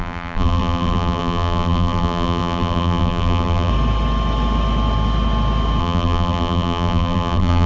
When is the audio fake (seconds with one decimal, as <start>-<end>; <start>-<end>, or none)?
0.0-3.7; 5.8-7.7